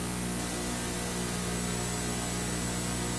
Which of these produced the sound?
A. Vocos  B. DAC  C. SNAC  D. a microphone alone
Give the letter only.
D